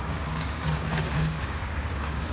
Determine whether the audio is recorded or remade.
remade